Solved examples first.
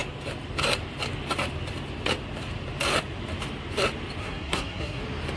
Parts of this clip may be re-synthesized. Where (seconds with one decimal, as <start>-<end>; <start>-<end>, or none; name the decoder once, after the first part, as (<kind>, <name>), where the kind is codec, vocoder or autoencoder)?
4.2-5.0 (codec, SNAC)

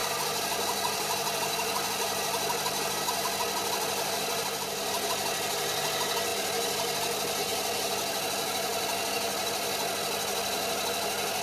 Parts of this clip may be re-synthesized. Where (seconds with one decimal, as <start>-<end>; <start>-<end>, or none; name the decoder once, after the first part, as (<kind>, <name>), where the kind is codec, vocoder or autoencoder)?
none

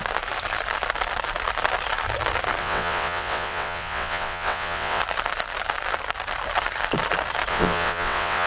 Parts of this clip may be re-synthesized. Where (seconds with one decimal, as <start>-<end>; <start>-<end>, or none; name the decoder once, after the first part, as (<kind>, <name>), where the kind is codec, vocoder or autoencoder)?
2.6-5.0 (vocoder, WaveNeXt); 7.5-8.5

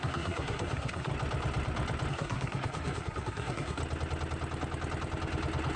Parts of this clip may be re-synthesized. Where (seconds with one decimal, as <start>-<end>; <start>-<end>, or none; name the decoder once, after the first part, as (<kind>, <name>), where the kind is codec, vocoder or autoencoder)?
0.0-1.1 (codec, SNAC); 2.1-3.8